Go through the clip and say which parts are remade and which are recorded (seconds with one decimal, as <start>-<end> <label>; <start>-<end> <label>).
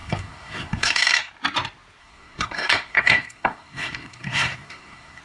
0.0-1.3 remade; 1.3-2.0 recorded; 2.0-5.2 remade